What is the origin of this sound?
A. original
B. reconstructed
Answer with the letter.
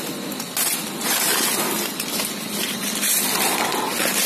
A